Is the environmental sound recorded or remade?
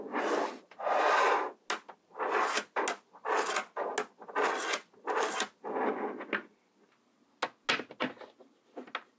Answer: recorded